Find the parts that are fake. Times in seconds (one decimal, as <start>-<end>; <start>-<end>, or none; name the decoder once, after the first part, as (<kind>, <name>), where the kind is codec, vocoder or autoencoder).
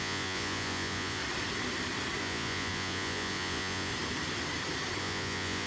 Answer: 0.0-1.2 (vocoder, Vocos); 2.2-3.9; 5.0-5.7